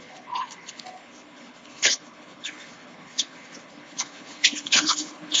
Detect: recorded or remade remade